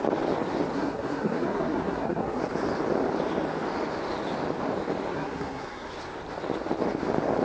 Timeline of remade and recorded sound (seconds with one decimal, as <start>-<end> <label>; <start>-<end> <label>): 0.0-0.7 recorded; 0.7-2.4 remade; 2.4-5.1 recorded; 5.1-5.9 remade; 5.9-7.4 recorded